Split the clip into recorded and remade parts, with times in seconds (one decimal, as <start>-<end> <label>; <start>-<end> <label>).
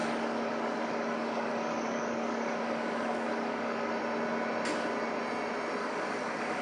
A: 0.0-4.0 remade; 4.0-5.8 recorded; 5.8-6.6 remade